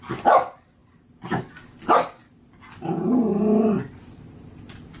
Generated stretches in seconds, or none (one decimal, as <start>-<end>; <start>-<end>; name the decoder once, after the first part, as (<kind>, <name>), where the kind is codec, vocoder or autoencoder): none